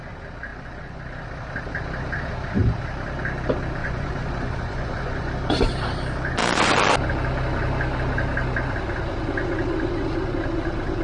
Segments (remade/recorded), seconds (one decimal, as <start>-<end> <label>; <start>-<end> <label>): 0.0-0.5 recorded; 0.5-1.0 remade; 1.0-3.8 recorded; 3.8-5.3 remade; 5.3-11.0 recorded